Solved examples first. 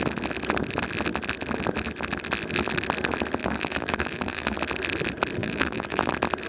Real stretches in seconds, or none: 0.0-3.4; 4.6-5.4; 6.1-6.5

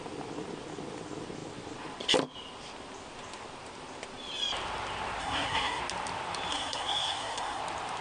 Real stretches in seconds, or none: 0.0-5.2; 5.8-6.5; 7.6-8.0

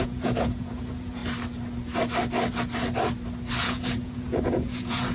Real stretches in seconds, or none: 1.2-3.6

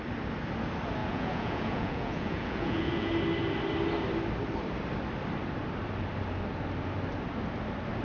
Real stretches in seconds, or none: 0.0-1.0; 3.1-8.0

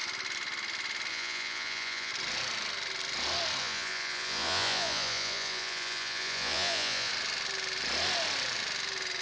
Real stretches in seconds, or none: 0.0-1.1; 2.1-3.6; 7.1-9.2